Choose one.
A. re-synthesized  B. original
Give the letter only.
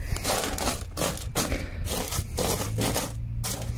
B